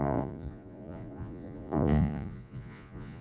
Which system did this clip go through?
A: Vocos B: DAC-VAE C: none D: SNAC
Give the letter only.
A